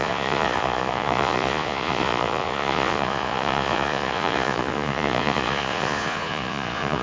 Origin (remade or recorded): remade